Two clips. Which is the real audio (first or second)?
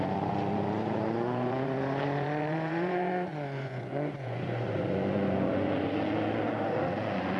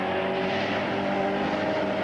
second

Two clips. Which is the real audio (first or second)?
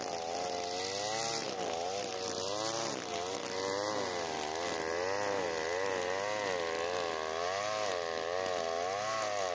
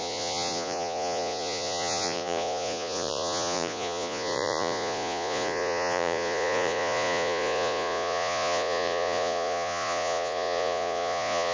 first